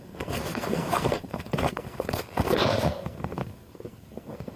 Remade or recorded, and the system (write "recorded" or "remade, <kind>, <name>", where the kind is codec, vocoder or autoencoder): remade, codec, SNAC